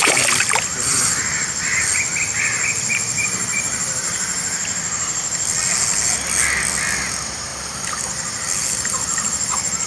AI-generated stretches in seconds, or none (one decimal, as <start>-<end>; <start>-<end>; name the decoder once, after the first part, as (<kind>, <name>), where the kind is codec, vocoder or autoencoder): 7.5-8.0 (vocoder, BigVGAN v2)